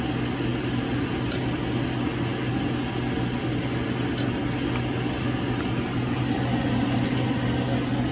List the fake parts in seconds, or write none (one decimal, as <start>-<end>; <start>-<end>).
none

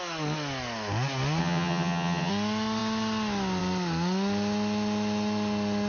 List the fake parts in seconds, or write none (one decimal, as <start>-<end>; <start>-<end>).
1.4-2.3

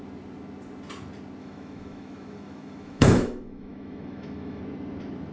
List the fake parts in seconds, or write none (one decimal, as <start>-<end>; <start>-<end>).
1.4-4.6

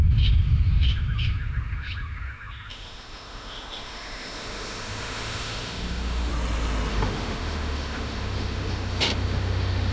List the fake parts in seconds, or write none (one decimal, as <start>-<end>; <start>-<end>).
0.0-6.3; 6.9-9.9